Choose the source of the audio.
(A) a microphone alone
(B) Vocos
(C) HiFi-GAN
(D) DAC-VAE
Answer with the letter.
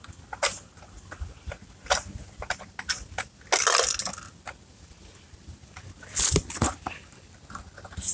A